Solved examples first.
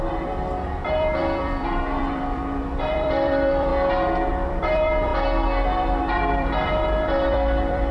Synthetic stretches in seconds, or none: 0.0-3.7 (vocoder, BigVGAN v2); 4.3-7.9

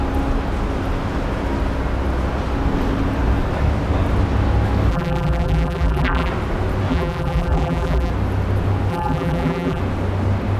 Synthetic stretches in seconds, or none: 4.9-6.3 (vocoder, BigVGAN v2); 6.9-8.1; 8.9-9.8

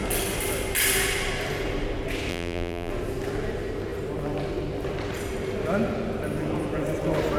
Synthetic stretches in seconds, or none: 2.3-2.9 (vocoder, BigVGAN v2)

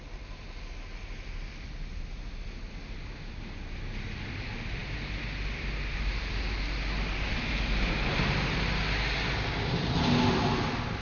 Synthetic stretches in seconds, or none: 4.8-6.1 (vocoder, BigVGAN v2)

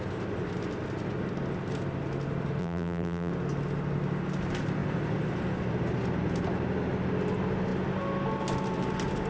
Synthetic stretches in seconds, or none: 2.6-3.3 (vocoder, BigVGAN v2)

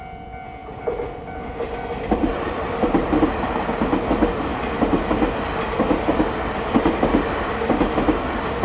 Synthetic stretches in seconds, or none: 0.6-3.2 (vocoder, BigVGAN v2)